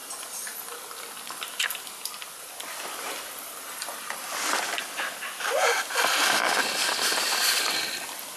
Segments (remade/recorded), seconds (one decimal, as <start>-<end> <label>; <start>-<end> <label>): 0.0-4.8 recorded; 4.8-7.7 remade; 7.7-8.4 recorded